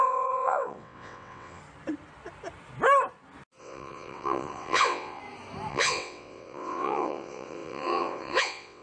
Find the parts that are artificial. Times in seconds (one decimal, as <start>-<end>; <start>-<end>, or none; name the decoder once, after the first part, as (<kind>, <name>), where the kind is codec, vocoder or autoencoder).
0.0-1.6 (vocoder, WaveNeXt); 3.6-5.2; 5.7-8.8